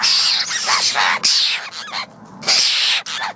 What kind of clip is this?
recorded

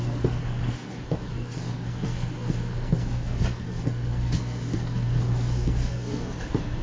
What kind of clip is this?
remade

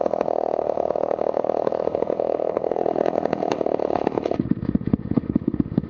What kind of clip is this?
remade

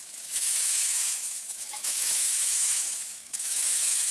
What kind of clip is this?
remade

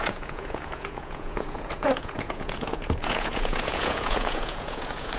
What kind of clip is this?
remade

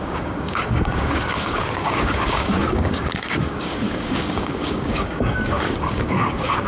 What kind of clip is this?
remade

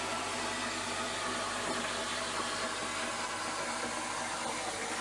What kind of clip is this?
recorded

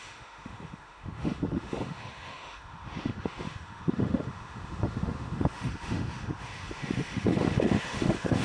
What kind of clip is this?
remade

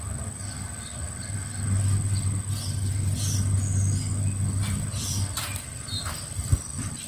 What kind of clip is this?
recorded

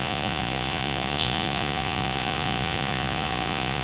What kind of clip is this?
remade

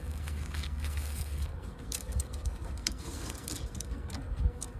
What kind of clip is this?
remade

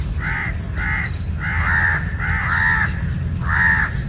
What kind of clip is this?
recorded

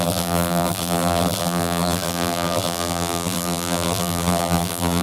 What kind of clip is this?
remade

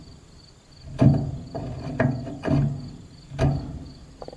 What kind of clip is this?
recorded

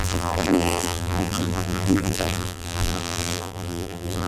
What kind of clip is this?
remade